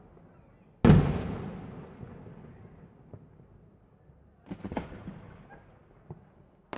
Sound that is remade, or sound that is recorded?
recorded